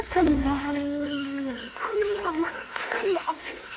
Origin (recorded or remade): remade